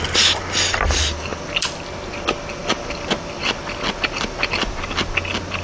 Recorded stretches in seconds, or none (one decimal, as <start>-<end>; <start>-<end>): 0.0-5.6

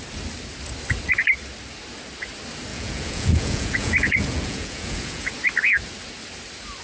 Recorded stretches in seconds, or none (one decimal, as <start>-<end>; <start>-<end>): 0.0-2.7; 5.3-6.8